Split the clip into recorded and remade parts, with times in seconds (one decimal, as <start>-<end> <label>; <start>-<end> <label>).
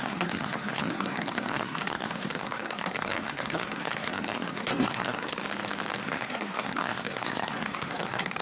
0.0-5.4 remade; 5.4-6.0 recorded; 6.0-8.4 remade